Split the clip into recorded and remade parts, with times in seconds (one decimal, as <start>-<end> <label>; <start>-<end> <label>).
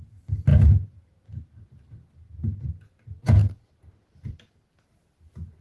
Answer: 0.0-5.6 recorded